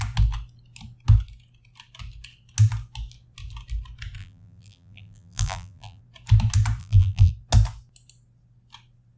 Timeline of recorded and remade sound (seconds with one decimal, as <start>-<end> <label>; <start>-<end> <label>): 0.0-4.2 recorded; 4.2-6.0 remade; 6.0-6.8 recorded; 6.8-7.3 remade; 7.3-9.2 recorded